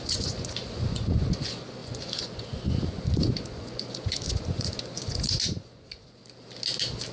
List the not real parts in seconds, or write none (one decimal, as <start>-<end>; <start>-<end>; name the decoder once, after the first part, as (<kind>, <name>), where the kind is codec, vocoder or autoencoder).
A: 0.0-6.2 (vocoder, Vocos)